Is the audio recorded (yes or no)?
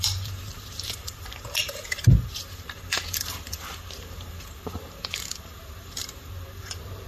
no